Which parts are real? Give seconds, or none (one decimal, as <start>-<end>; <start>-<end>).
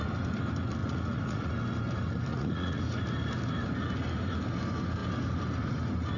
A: 0.0-0.8; 1.5-2.3; 2.8-6.2